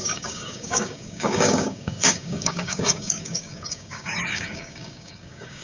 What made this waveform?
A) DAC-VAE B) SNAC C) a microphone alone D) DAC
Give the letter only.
D